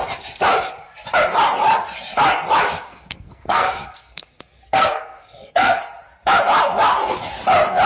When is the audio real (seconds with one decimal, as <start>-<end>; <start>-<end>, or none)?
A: 0.0-2.9; 5.8-7.9